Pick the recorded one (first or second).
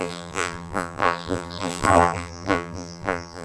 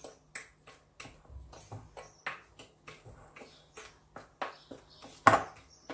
second